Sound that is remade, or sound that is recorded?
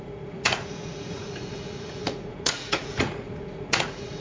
remade